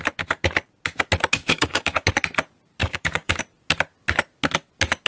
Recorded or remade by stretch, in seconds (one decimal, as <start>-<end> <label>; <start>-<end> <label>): 0.0-1.4 recorded; 1.4-2.1 remade; 2.1-2.8 recorded; 2.8-3.4 remade; 3.4-5.1 recorded